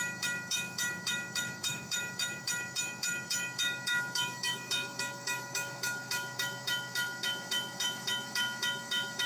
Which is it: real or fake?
fake